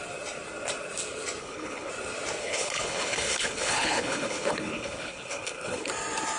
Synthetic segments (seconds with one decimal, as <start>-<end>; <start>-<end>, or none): 1.4-1.9; 2.4-5.9